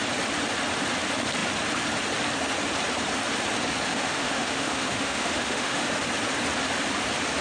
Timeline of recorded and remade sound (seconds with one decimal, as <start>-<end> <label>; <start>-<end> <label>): 0.0-3.9 recorded; 3.9-5.9 remade; 5.9-7.4 recorded